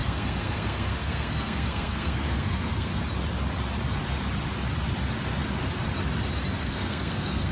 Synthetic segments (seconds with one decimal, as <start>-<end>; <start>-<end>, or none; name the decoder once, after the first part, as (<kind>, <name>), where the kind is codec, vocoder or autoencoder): 0.0-2.9 (codec, SNAC); 6.6-7.5